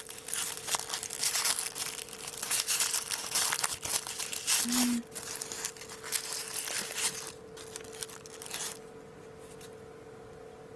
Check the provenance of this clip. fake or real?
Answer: real